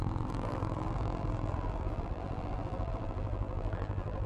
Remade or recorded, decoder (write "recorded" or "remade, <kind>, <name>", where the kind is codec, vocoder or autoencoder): remade, vocoder, BigVGAN v2